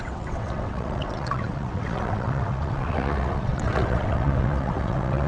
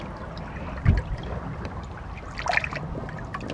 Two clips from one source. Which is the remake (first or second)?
first